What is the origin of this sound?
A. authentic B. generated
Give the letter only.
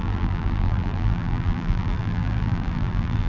B